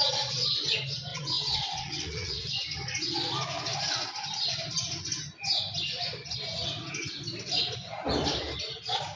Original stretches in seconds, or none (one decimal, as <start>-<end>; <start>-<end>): 0.0-1.1; 2.5-9.2